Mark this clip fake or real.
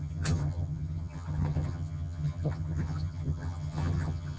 fake